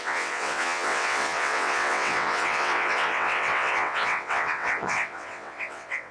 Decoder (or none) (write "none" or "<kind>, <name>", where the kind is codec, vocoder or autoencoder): vocoder, WaveNeXt